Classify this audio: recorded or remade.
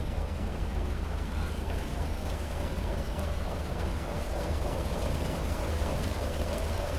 remade